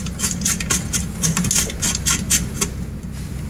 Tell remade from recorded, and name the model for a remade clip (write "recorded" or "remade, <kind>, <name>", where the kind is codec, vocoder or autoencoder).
recorded